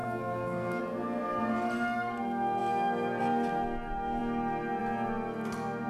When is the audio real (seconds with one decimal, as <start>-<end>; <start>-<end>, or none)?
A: 0.8-5.9